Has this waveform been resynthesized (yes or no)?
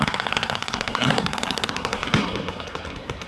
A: yes